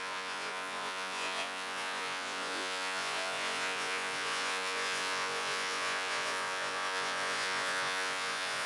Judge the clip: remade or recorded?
remade